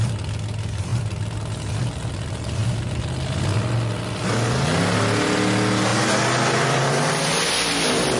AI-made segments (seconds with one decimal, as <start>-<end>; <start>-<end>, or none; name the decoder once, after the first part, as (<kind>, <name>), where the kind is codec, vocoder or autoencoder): none